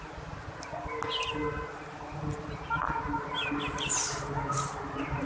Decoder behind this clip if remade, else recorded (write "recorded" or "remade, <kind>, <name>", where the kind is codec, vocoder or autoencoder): recorded